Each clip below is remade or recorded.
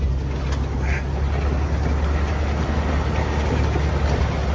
recorded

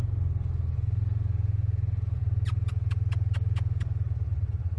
recorded